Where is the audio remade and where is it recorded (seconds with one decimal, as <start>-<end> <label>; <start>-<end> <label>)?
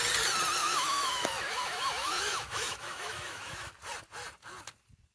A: 0.0-0.6 recorded; 0.6-3.7 remade; 3.7-5.1 recorded